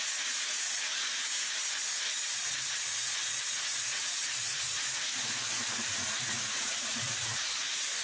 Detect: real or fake fake